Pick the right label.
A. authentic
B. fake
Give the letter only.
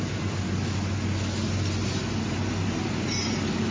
A